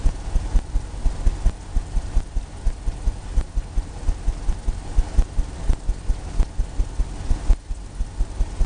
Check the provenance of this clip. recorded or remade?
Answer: recorded